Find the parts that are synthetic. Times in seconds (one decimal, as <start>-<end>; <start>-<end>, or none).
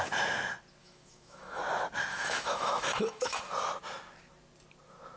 0.8-1.6; 2.1-3.4